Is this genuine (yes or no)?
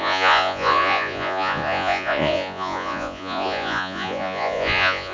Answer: no